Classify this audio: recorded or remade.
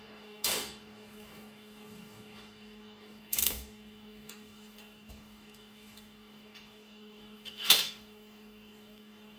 remade